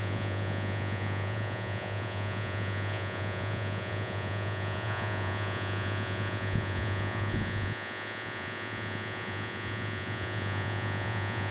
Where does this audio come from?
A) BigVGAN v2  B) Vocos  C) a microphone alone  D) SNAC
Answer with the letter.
B